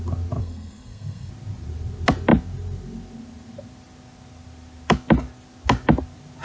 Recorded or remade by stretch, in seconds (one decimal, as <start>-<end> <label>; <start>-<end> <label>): 0.0-0.4 recorded; 0.4-1.3 remade; 1.3-6.4 recorded